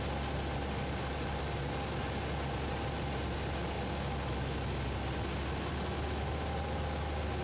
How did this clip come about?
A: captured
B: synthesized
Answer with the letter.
A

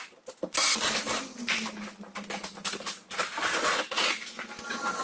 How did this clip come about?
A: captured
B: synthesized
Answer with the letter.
A